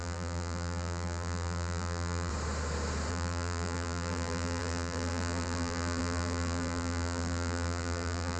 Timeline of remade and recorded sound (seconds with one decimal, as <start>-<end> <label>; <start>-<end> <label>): 0.0-2.3 remade; 2.3-3.1 recorded; 3.1-8.4 remade